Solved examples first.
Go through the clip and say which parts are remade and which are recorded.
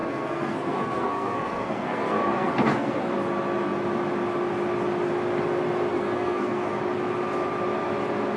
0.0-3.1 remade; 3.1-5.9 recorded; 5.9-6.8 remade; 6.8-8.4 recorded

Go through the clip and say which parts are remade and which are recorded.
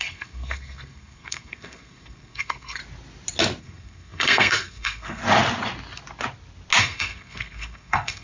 0.0-2.8 remade; 2.8-3.6 recorded; 3.6-5.2 remade; 5.2-6.8 recorded; 6.8-8.2 remade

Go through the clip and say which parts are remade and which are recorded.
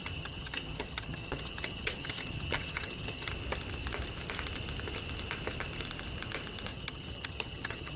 0.0-3.3 remade; 3.3-6.7 recorded; 6.7-8.0 remade